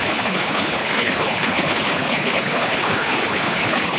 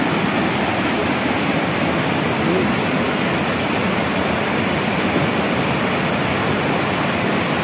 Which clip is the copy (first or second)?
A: first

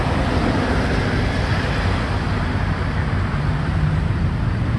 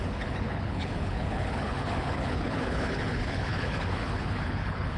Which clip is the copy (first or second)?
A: second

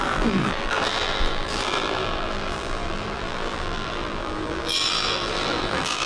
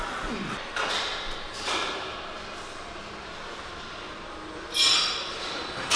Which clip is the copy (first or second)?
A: first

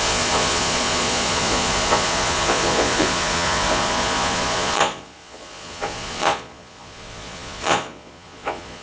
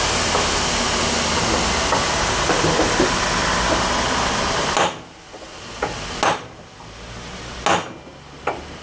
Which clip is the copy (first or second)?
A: first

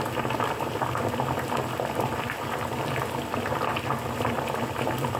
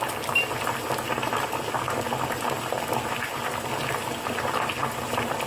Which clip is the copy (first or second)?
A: first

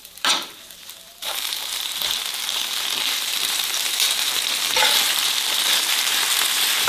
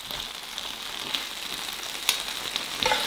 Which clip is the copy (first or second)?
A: first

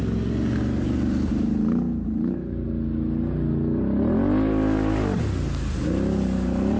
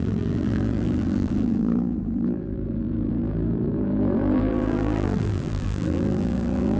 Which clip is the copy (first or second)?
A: second